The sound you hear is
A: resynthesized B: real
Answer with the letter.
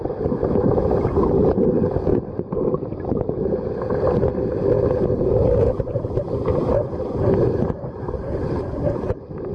B